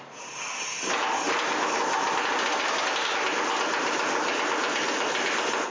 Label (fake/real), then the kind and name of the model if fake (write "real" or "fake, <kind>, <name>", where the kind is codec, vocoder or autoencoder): real